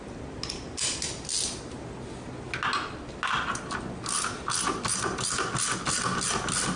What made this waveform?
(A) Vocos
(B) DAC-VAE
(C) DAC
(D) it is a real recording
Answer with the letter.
D